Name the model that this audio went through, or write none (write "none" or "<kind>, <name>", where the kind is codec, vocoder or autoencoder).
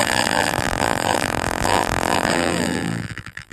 vocoder, BigVGAN v2